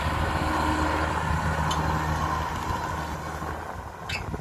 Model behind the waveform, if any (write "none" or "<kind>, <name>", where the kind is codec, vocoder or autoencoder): none